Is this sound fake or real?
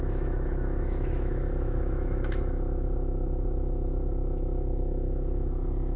fake